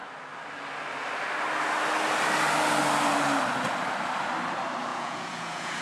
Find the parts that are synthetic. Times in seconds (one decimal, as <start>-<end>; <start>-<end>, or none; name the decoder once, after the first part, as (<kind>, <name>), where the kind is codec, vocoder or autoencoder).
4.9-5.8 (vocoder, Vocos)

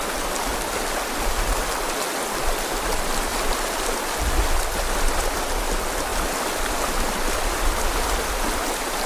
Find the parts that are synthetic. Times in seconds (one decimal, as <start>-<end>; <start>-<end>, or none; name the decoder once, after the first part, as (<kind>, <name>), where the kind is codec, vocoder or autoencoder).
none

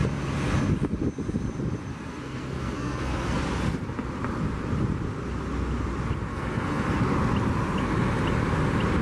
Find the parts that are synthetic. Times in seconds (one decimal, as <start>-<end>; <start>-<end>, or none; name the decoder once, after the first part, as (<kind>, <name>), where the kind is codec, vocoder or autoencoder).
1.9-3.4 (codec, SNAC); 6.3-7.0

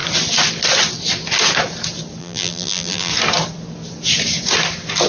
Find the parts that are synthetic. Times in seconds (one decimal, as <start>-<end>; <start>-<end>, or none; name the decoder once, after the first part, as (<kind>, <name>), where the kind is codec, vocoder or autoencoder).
2.2-3.1 (vocoder, BigVGAN v2)

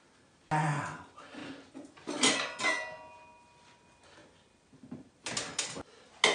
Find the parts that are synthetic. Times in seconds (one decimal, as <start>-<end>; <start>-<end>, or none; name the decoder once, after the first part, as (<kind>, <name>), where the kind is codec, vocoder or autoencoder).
none

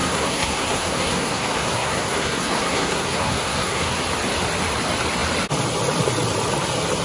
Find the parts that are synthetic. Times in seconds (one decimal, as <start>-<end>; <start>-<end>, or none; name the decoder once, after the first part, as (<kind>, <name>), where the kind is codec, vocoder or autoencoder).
0.0-4.0 (codec, SNAC)